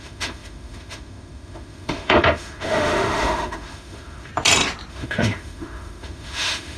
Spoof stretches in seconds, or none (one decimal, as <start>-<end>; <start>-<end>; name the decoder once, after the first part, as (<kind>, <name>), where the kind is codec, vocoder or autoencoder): 0.0-4.3 (autoencoder, DAC-VAE); 4.9-6.8